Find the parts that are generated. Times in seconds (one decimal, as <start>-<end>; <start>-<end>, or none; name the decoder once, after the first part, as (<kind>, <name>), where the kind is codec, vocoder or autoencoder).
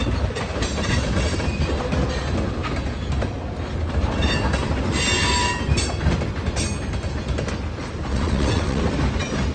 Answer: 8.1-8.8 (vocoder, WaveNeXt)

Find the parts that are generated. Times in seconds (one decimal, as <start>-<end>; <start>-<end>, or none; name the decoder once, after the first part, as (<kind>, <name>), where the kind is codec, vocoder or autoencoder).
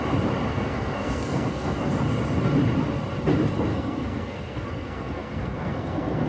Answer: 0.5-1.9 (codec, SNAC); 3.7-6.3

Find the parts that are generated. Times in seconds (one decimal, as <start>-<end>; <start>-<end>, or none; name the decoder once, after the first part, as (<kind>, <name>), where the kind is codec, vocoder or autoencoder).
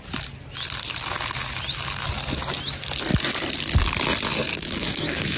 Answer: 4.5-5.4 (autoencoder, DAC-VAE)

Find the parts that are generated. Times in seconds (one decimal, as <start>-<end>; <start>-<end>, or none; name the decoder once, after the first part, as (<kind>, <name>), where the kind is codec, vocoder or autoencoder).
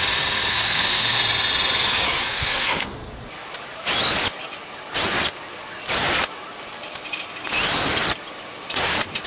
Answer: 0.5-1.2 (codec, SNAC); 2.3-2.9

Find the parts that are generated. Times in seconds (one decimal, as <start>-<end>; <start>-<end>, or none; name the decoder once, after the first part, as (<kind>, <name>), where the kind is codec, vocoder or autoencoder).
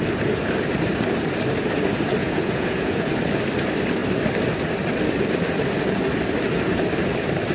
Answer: 2.2-3.1 (vocoder, Vocos)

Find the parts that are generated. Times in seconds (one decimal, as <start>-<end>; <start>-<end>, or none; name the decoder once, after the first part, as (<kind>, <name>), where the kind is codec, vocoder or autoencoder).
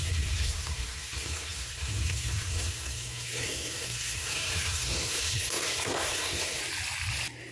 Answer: 0.0-6.6 (codec, SNAC)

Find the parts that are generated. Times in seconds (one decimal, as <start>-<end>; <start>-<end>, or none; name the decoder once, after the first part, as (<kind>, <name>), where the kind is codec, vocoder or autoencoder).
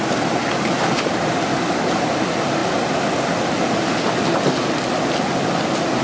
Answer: none